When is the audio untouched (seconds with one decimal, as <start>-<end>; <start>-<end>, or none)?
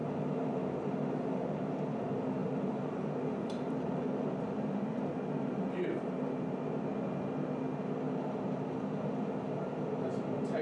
1.6-2.4; 6.5-10.6